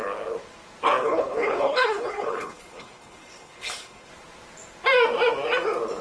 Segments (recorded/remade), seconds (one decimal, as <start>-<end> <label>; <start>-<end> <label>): 0.0-1.0 recorded; 1.0-4.1 remade; 4.1-6.0 recorded